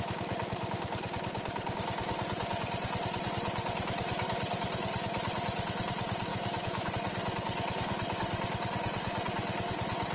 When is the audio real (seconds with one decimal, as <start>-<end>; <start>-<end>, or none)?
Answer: 0.0-6.3; 6.9-10.1

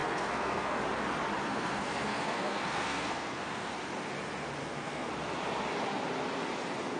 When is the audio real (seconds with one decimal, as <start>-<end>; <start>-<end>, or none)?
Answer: 0.8-1.4; 3.7-4.6; 5.1-7.0

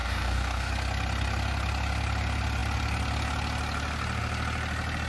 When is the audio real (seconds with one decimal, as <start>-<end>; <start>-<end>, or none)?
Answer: 0.7-5.1